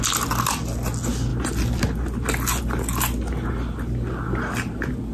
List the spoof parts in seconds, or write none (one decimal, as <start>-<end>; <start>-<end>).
none